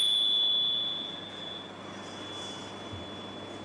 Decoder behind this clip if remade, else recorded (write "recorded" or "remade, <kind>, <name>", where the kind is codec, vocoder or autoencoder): recorded